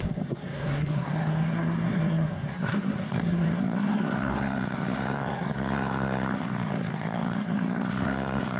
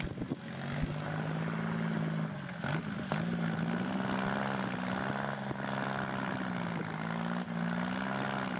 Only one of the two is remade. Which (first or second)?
first